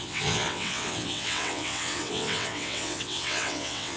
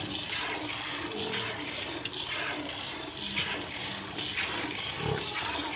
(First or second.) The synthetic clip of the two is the first